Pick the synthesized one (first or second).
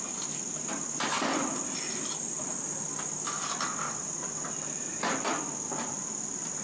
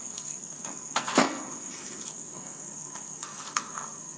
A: second